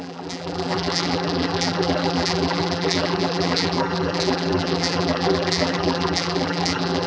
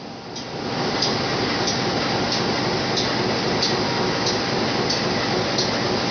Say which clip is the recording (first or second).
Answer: second